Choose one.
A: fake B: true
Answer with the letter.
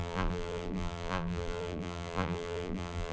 A